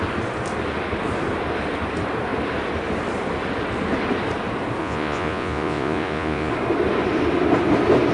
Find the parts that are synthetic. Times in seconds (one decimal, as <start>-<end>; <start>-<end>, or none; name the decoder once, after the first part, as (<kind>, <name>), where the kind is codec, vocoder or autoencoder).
4.8-6.5 (vocoder, Vocos)